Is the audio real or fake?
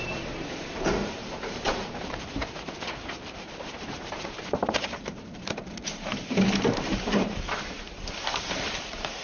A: fake